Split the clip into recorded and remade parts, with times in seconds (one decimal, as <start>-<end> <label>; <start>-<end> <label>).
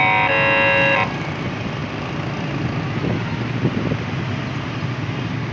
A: 0.0-5.5 recorded